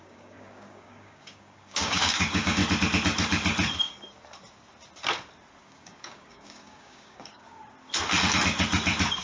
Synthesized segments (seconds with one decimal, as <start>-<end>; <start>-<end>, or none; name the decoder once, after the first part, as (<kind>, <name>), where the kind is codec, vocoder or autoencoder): 0.0-2.6 (codec, DAC); 5.6-7.6